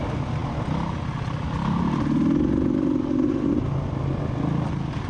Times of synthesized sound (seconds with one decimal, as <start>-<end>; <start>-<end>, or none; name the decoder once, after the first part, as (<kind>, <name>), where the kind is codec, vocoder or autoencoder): none